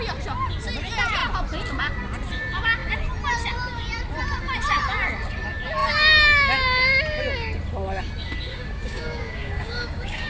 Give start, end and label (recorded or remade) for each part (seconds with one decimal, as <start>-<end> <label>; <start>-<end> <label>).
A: 0.0-8.5 recorded; 8.5-10.3 remade